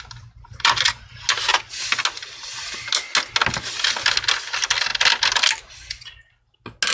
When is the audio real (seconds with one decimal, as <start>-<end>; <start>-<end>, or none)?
0.0-6.9